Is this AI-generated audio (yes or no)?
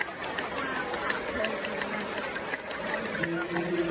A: no